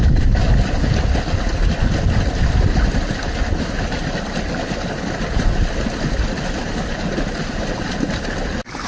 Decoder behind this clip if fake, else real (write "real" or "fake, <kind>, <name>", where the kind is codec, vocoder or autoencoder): real